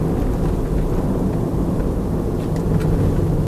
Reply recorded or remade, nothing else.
recorded